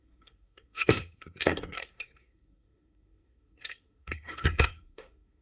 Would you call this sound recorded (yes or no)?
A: no